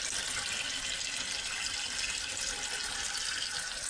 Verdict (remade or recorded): recorded